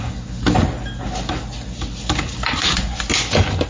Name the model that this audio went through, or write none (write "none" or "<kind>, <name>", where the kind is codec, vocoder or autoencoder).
none